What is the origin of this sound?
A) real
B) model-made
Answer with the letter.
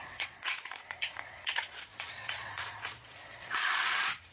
B